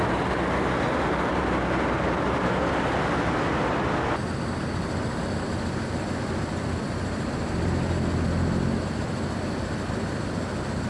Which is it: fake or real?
real